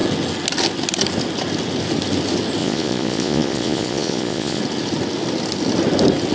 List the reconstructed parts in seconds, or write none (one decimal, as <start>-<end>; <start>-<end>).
2.6-4.6